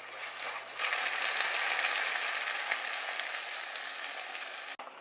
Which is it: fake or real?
real